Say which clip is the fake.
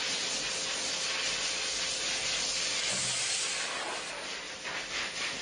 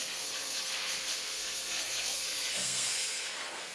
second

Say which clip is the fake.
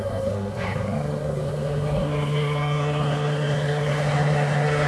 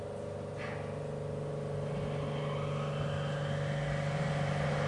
first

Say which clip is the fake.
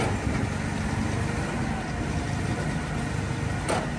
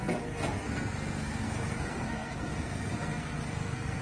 second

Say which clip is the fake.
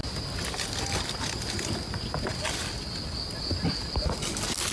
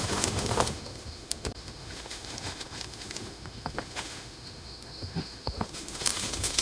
second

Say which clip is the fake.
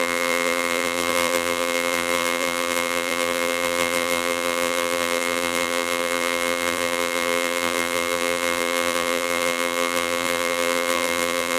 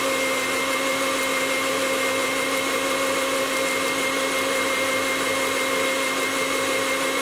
first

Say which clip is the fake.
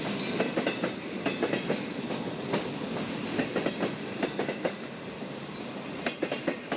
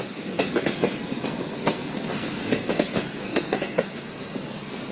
second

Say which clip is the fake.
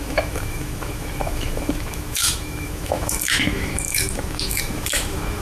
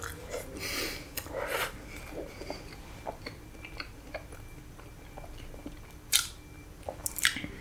first